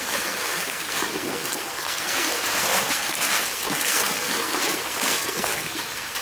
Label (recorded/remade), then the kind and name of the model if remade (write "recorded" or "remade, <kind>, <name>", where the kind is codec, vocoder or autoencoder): remade, codec, SNAC